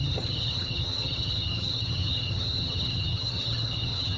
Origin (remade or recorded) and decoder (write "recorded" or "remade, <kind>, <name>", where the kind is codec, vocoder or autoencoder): remade, vocoder, HiFi-GAN